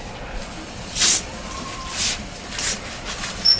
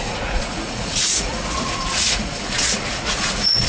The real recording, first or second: first